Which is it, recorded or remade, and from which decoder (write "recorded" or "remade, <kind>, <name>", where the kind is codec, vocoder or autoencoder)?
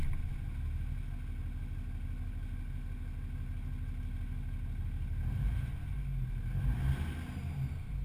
recorded